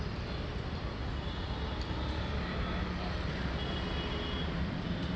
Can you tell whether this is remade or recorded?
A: recorded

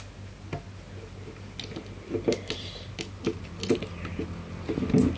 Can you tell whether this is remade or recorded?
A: recorded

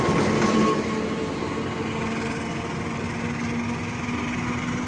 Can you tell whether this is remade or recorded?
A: recorded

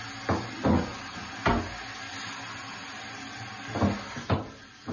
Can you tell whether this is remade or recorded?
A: recorded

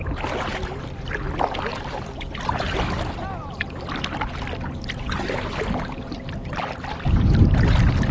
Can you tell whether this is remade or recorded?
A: recorded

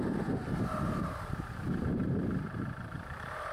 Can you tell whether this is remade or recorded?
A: remade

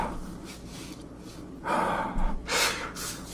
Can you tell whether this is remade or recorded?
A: recorded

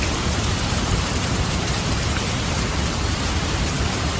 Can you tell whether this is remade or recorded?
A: remade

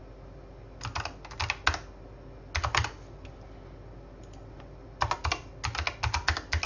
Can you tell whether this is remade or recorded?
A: recorded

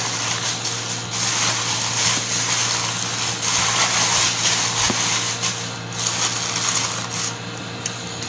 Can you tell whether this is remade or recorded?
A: recorded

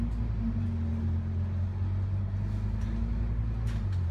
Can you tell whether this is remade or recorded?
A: recorded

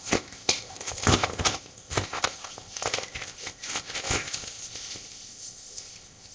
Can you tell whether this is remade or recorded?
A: remade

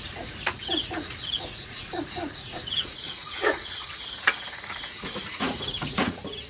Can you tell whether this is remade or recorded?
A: remade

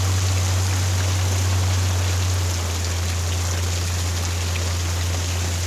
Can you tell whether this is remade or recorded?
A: recorded